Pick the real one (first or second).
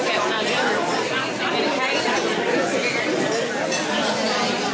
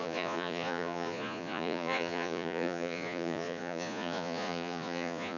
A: first